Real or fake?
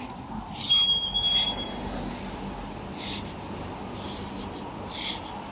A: real